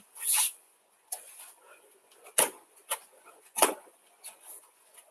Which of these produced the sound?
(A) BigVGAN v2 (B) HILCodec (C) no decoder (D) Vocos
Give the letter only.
D